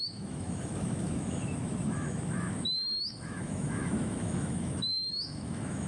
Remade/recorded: remade